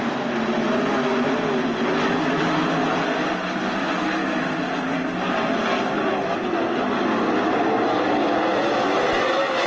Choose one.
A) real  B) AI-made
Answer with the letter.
A